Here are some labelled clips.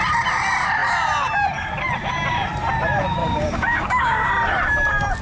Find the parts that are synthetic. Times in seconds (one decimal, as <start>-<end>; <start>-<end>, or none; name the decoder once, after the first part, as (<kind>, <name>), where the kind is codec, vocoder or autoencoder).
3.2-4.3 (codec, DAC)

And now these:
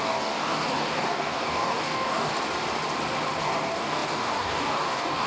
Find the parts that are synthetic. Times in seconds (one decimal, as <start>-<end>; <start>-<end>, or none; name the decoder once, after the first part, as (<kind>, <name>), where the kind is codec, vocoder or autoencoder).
0.0-2.3 (codec, DAC); 3.4-5.3

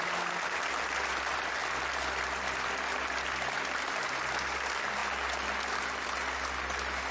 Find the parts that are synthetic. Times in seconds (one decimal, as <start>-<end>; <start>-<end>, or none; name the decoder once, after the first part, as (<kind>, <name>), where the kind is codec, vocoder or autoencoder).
none

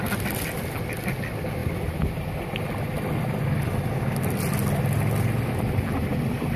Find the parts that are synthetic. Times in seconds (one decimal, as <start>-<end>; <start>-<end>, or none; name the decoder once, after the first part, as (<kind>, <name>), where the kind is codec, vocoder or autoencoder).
none

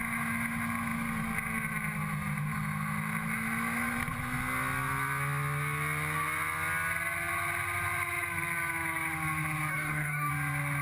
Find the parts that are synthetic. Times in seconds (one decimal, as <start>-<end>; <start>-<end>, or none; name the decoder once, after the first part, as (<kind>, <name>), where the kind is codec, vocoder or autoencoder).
9.7-10.3 (codec, DAC)

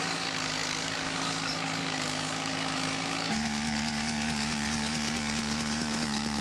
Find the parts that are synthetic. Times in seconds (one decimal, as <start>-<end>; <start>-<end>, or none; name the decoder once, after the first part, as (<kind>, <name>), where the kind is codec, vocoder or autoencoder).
0.0-6.4 (codec, DAC)